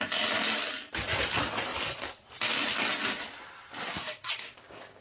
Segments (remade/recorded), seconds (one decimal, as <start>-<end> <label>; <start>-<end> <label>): 0.0-3.9 recorded; 3.9-5.0 remade